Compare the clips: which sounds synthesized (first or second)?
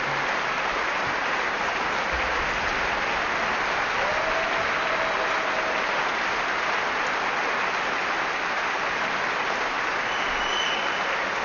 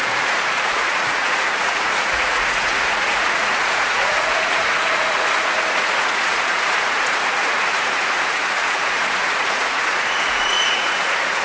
second